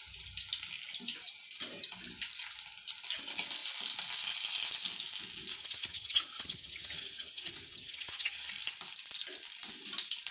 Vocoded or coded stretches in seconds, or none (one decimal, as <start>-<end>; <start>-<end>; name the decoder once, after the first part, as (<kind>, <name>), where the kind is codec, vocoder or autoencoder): 5.5-8.5 (vocoder, HiFi-GAN)